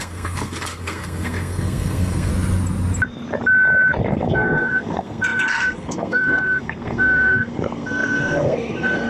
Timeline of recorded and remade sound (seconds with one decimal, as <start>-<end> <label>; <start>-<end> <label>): 0.0-2.3 remade; 2.3-4.0 recorded; 4.0-9.1 remade